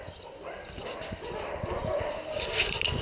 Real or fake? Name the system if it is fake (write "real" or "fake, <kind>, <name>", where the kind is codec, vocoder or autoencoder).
real